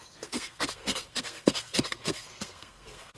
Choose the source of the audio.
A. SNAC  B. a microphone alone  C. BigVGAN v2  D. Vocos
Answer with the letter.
A